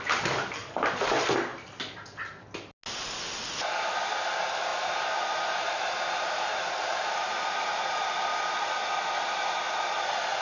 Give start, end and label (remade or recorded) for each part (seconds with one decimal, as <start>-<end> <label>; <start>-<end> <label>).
0.0-4.7 recorded; 4.7-8.5 remade; 8.5-10.4 recorded